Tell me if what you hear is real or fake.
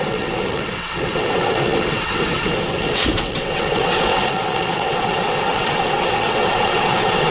fake